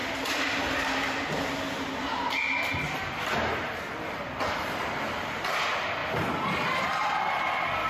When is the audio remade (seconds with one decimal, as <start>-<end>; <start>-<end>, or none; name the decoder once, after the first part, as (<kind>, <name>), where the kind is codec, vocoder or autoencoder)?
0.0-0.6 (vocoder, BigVGAN v2); 6.0-7.3